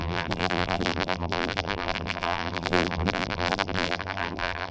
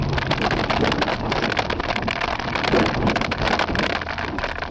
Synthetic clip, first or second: first